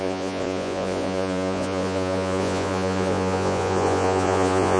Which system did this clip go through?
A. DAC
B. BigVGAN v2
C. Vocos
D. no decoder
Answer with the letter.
C